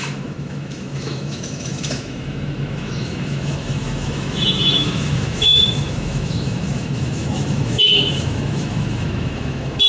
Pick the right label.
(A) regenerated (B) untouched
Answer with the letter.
A